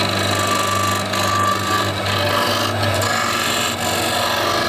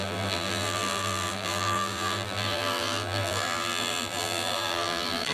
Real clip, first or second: first